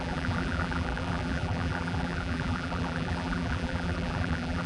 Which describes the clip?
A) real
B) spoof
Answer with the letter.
B